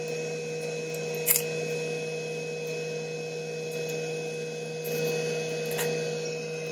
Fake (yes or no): no